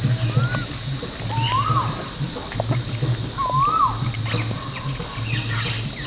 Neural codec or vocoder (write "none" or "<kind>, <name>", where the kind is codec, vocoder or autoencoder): none